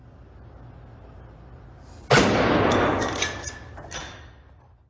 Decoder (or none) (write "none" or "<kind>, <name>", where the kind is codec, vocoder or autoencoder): none